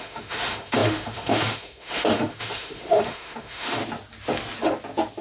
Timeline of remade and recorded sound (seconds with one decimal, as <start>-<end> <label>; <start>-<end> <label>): 0.0-3.8 remade; 3.8-5.2 recorded